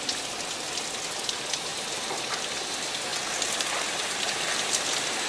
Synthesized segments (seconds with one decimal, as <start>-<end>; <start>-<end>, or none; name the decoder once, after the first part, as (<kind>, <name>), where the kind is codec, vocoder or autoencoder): none